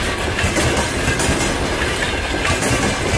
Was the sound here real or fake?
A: real